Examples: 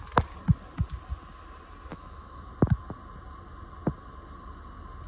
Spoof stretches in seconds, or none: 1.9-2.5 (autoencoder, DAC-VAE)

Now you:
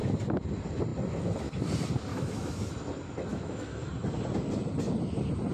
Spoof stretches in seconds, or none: 2.1-2.7 (autoencoder, DAC-VAE); 3.3-3.8

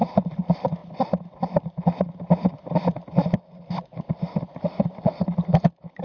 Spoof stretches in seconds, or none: none

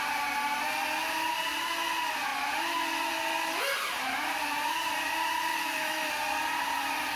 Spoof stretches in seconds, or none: 5.5-6.1 (autoencoder, DAC-VAE)

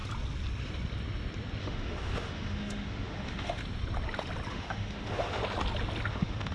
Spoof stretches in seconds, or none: 1.6-3.6 (autoencoder, DAC-VAE); 4.5-5.4; 6.1-6.5